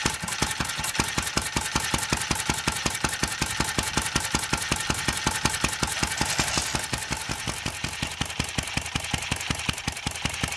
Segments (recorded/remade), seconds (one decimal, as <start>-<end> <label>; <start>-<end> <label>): 0.0-10.6 recorded